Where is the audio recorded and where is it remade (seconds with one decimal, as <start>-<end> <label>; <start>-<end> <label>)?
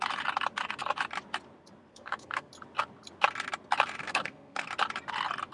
0.0-1.9 recorded; 1.9-2.5 remade; 2.5-4.0 recorded; 4.0-4.7 remade; 4.7-5.5 recorded